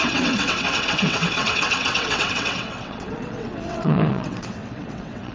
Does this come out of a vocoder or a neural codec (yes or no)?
yes